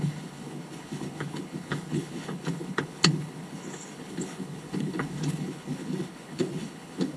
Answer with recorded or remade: remade